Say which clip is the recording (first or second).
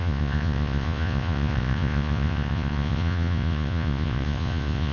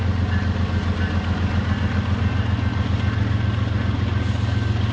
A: second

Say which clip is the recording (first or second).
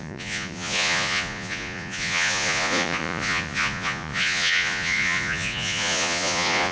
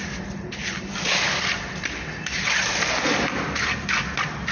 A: second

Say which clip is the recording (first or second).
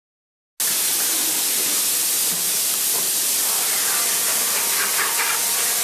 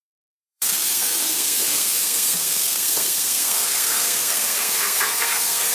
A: first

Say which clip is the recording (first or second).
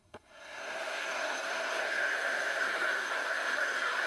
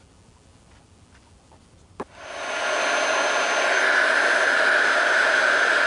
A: second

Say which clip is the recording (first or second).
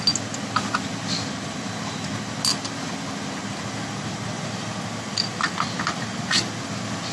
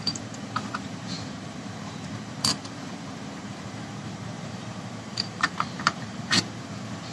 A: first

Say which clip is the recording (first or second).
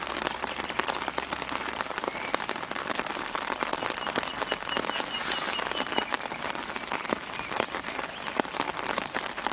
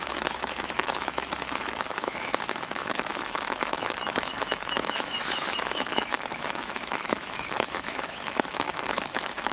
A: first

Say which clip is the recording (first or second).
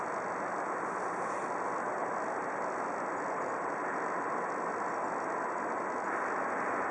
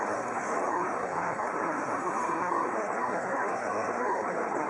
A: first